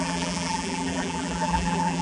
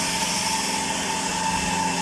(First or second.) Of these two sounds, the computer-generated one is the first